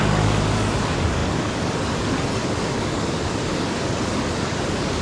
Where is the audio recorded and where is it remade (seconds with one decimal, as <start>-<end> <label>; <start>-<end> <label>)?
0.0-5.0 remade